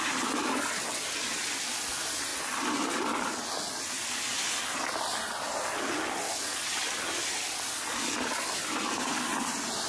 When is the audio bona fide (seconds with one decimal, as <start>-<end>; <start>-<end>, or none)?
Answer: 0.0-9.9